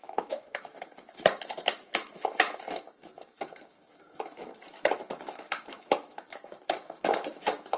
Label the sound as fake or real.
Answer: fake